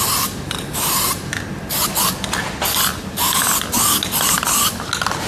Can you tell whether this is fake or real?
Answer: real